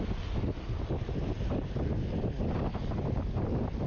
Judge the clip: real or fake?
real